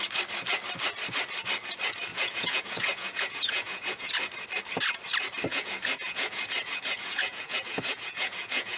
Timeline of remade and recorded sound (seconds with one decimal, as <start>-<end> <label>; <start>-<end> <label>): 0.0-2.1 recorded; 2.1-4.1 remade; 4.1-5.5 recorded; 5.5-8.8 remade